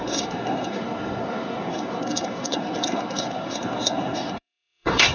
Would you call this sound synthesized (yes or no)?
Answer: yes